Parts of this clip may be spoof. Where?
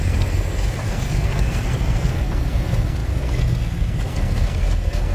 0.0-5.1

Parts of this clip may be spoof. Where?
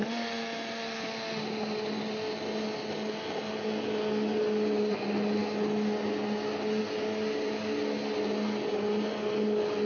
none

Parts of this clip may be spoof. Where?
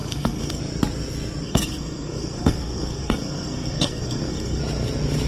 0.0-0.6; 1.4-4.6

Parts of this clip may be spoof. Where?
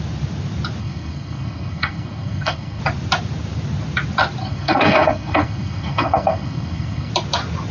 0.8-2.8; 4.4-7.1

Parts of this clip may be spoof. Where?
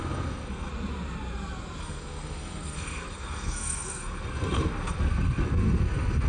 0.0-0.7; 1.8-6.3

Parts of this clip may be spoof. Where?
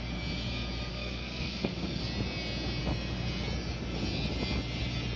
0.9-2.0